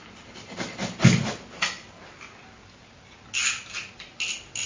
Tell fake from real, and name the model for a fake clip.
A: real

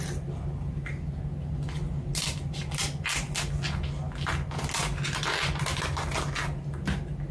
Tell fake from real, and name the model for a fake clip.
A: real